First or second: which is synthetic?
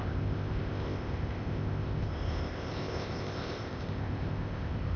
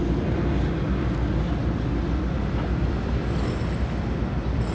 first